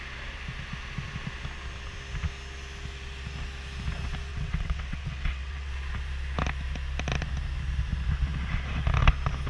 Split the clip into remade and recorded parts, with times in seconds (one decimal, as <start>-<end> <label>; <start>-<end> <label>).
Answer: 0.0-4.3 recorded; 4.3-5.7 remade; 5.7-9.5 recorded